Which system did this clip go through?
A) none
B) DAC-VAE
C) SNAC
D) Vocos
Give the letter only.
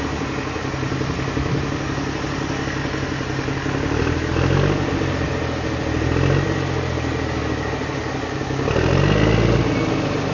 A